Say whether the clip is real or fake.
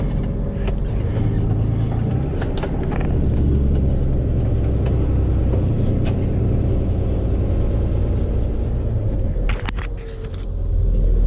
real